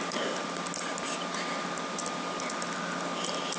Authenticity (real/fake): real